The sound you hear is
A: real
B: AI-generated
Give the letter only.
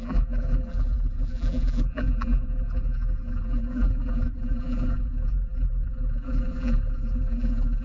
B